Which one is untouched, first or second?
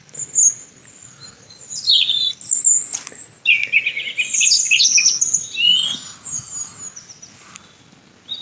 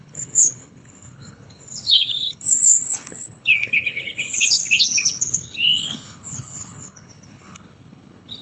first